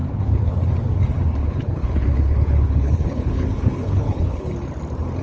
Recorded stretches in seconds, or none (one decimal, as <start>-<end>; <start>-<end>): 0.5-1.4; 4.5-5.2